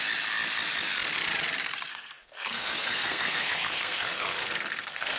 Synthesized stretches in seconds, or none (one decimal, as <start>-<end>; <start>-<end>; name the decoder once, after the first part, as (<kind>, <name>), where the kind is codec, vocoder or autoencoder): 1.9-5.2 (codec, SNAC)